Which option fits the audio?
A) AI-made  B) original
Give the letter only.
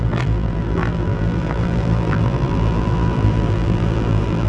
A